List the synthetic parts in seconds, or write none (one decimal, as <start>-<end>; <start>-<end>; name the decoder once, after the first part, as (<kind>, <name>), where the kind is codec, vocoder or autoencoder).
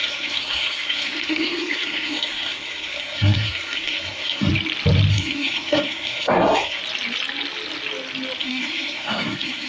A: 0.0-4.5 (codec, SNAC); 5.1-6.8; 8.4-9.7